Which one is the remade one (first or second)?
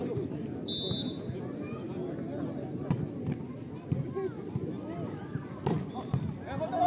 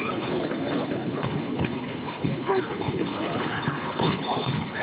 second